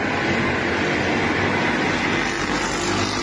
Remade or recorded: recorded